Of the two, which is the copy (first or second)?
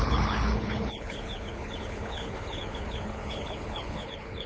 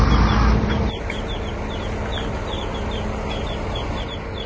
first